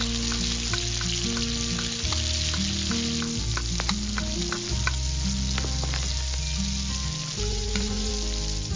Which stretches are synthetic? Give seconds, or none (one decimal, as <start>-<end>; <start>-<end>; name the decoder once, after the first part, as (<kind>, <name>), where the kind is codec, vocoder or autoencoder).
7.5-8.1 (vocoder, Vocos)